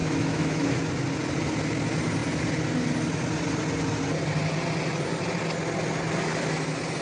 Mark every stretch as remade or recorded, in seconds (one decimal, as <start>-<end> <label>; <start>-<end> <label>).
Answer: 0.0-0.7 remade; 0.7-7.0 recorded